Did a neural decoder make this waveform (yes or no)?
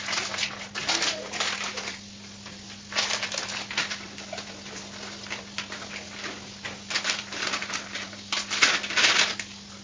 no